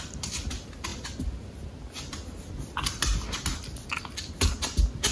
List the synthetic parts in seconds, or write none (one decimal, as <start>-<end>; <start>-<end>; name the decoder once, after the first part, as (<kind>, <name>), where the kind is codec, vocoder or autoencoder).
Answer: none